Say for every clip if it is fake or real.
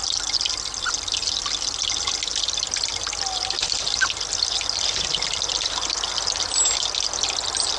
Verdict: real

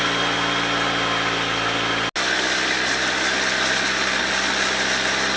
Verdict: real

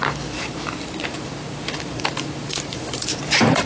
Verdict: fake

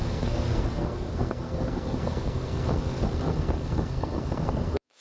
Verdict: fake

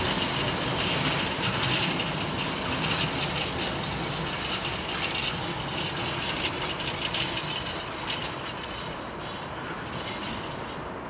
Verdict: real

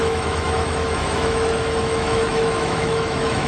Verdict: fake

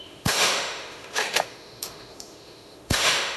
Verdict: fake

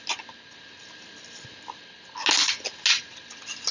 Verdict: real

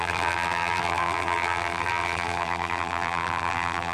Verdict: fake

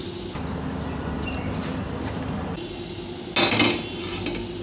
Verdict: real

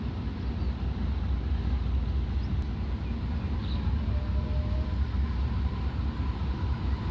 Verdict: real